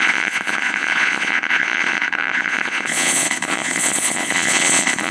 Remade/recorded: remade